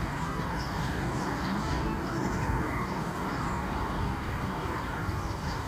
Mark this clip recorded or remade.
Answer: remade